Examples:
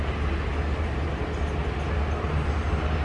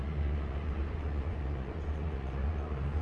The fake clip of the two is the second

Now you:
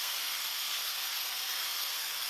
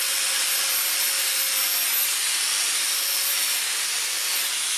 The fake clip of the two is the first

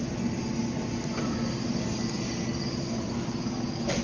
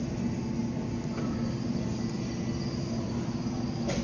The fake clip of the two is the first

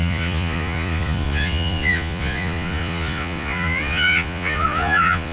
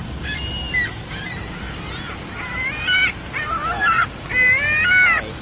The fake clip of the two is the first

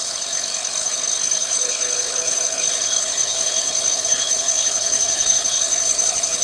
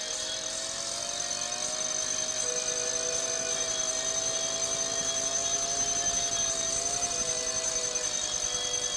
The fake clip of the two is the first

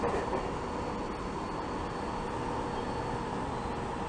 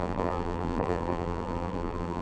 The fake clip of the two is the second